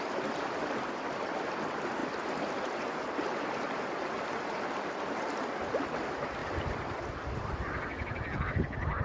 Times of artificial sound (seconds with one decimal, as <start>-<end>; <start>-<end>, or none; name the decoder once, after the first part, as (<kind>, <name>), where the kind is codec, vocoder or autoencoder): 0.0-9.0 (vocoder, BigVGAN v2)

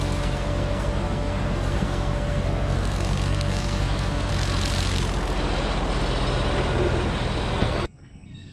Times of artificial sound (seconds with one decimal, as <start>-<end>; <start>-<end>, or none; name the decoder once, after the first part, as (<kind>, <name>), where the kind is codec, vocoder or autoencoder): 0.0-4.3 (codec, SNAC); 7.5-8.5

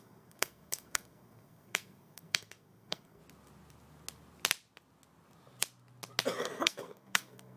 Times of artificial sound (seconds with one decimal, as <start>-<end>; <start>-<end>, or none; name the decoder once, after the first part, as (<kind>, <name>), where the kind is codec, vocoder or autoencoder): 0.0-3.2 (codec, SNAC); 6.4-7.6

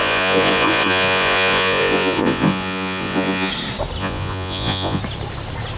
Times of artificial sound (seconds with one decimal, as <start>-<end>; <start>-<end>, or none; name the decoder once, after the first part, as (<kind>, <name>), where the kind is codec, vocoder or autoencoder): 0.0-3.5 (vocoder, Vocos); 4.0-5.0